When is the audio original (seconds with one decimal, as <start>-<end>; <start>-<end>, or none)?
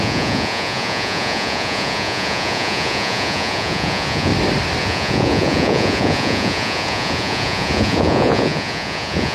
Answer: 4.3-4.8